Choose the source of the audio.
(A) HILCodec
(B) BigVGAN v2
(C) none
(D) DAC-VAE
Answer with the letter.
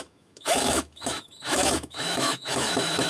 D